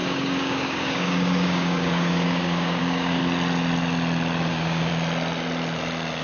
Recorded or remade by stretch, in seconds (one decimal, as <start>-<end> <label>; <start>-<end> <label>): 0.0-3.2 remade; 3.2-4.5 recorded; 4.5-4.9 remade; 4.9-6.2 recorded